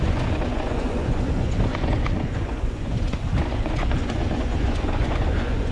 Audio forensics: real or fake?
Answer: fake